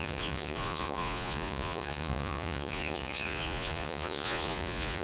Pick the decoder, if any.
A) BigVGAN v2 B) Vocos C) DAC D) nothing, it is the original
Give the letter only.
B